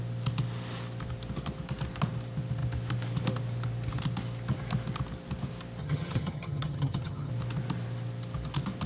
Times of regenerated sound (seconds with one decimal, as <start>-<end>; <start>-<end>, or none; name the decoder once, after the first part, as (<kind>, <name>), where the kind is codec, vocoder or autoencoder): 5.8-7.3 (vocoder, HiFi-GAN)